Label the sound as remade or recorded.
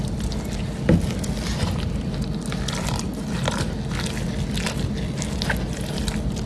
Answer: recorded